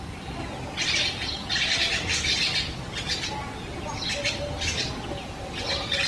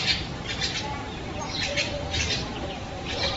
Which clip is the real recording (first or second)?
first